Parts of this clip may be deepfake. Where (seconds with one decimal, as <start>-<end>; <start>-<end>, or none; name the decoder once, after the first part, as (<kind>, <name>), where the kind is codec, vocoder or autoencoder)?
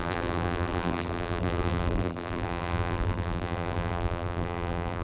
0.0-5.0 (vocoder, BigVGAN v2)